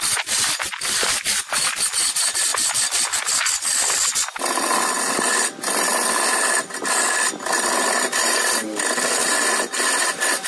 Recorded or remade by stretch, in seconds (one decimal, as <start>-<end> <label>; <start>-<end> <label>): 0.0-10.5 recorded